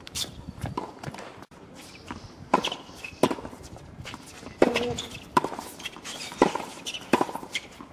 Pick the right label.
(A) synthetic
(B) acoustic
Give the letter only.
A